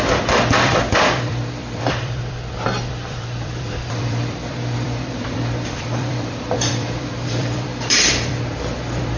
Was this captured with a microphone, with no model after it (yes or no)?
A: no